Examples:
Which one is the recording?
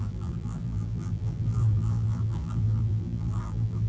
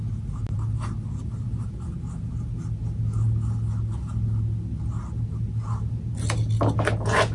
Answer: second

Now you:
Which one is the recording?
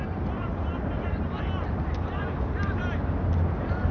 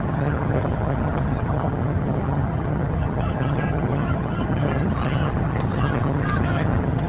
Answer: first